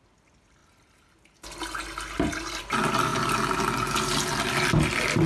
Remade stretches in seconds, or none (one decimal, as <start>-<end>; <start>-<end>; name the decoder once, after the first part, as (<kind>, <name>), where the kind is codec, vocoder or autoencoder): none